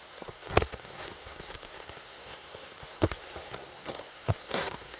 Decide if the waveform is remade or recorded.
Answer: remade